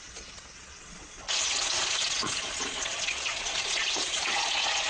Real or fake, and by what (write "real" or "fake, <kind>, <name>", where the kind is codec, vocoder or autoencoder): fake, vocoder, Vocos